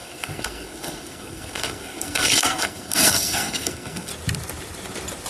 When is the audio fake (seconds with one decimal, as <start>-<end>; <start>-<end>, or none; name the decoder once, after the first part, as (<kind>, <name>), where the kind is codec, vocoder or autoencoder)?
0.0-4.1 (codec, SNAC)

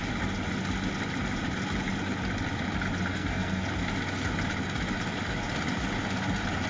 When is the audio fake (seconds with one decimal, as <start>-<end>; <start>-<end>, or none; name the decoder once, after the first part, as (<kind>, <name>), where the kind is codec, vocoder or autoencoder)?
3.1-3.6 (codec, SNAC)

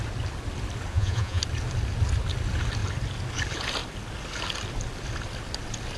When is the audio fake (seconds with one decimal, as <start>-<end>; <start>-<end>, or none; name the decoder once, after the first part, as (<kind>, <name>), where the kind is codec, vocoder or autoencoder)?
0.9-1.4 (vocoder, Vocos)

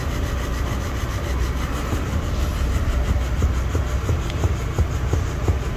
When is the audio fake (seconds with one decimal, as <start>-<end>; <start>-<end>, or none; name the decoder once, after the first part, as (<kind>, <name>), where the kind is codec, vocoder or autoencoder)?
none

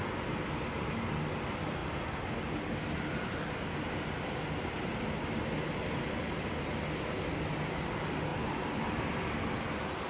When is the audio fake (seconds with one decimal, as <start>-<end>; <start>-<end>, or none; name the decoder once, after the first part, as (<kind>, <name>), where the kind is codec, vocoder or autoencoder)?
none